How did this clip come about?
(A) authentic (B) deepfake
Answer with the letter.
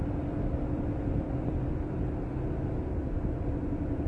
A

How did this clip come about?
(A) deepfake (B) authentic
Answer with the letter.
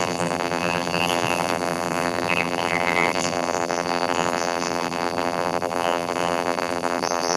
A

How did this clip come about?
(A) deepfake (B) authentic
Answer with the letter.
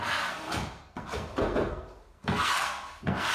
A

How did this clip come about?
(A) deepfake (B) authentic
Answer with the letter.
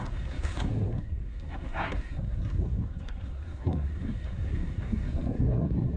A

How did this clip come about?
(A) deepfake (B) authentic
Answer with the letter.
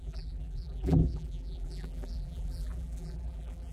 A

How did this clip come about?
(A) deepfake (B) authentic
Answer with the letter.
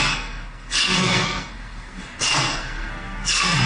A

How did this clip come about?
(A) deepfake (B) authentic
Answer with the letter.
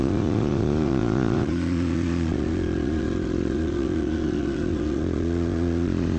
A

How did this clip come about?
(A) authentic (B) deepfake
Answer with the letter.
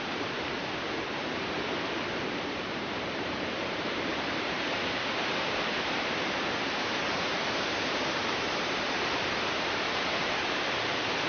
B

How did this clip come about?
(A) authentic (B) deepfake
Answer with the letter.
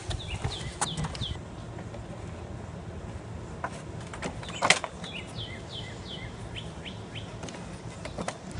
A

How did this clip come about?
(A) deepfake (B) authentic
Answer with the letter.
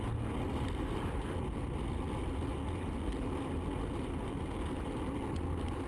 B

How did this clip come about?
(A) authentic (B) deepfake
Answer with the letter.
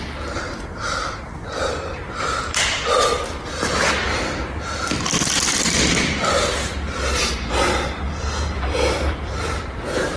A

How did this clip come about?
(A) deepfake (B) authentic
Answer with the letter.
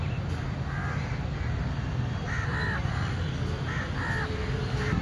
B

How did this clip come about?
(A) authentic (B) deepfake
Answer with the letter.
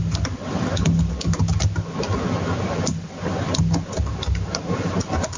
A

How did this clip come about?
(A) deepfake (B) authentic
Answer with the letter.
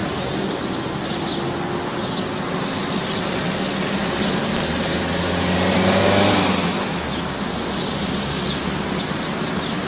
B